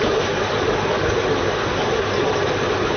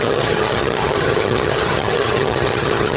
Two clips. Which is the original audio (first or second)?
first